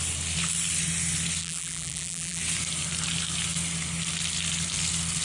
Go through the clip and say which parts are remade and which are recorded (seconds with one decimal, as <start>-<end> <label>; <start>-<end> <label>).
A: 0.0-1.4 recorded; 1.4-2.4 remade; 2.4-5.2 recorded